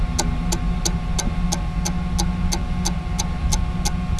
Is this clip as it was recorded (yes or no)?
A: yes